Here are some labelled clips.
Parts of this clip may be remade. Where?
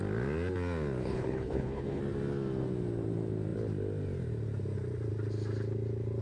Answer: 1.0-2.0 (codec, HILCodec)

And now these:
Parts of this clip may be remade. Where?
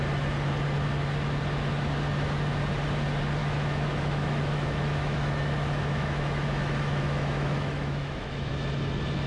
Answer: 3.4-8.5 (autoencoder, DAC-VAE)